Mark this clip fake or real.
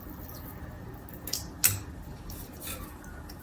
real